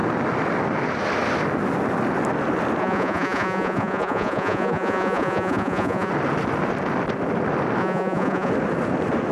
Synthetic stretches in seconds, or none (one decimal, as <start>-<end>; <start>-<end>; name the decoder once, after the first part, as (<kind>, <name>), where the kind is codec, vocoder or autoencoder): 2.8-6.1 (vocoder, Vocos); 7.8-8.5